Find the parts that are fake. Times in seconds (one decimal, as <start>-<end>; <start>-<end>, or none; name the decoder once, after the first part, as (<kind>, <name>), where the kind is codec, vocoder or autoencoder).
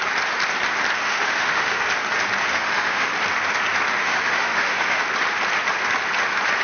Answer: 1.0-1.8 (autoencoder, DAC-VAE); 2.5-3.1; 4.0-5.0